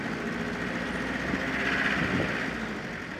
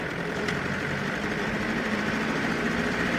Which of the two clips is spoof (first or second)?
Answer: second